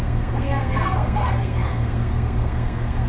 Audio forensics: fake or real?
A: fake